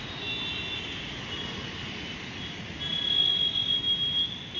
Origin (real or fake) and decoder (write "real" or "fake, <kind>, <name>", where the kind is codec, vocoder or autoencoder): real